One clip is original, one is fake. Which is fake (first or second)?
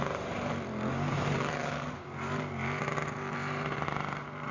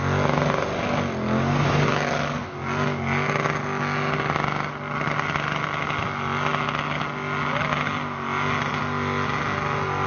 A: first